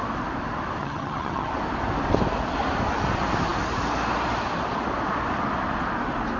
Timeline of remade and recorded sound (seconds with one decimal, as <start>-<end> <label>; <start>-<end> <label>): 0.0-0.8 recorded; 0.8-1.5 remade; 1.5-6.4 recorded